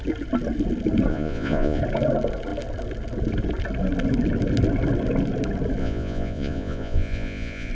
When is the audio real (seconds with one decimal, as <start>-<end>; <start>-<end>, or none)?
0.0-1.1; 1.8-5.8